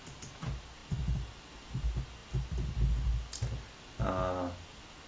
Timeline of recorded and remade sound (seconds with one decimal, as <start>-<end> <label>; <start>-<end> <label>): 0.0-5.1 recorded